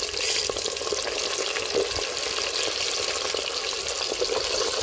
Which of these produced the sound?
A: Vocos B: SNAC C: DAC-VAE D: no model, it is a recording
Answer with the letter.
D